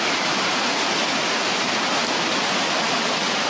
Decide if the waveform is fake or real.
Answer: real